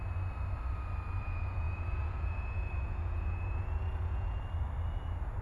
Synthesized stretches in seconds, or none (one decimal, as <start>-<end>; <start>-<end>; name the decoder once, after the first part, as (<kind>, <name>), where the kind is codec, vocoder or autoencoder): 1.2-4.4 (vocoder, Vocos)